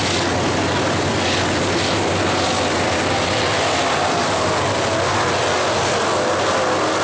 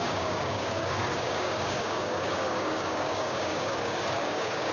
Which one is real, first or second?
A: first